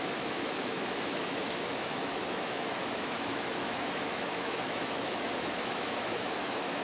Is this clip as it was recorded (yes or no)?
no